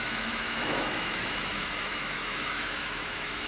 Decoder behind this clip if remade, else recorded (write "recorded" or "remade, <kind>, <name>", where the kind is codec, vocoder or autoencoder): remade, autoencoder, DAC-VAE